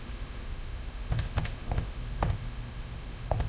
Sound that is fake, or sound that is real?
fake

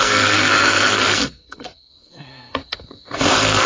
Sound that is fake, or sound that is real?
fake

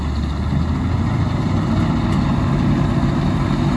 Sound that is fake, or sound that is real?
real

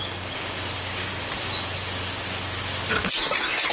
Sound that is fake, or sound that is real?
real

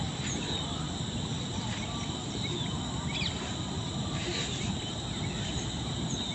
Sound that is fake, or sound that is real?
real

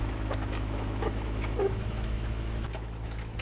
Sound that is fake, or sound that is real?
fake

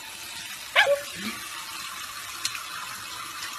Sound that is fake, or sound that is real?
real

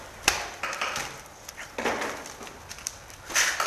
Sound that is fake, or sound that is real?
real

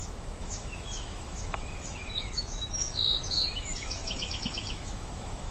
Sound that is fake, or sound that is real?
fake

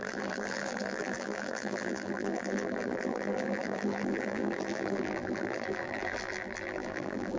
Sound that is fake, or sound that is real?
fake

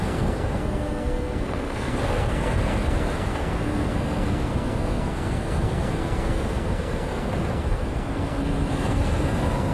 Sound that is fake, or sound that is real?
fake